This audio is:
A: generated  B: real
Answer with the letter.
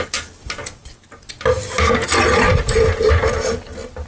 B